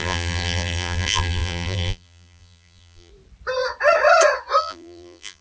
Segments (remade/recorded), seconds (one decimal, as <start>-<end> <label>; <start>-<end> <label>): 0.0-3.1 remade; 3.1-4.6 recorded; 4.6-5.4 remade